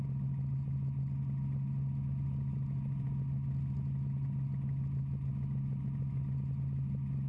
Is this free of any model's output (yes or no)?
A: yes